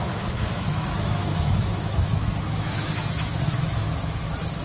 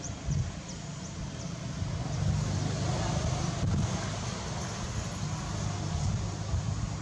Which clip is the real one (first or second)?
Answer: second